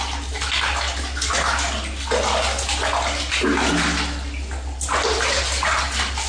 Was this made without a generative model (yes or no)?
yes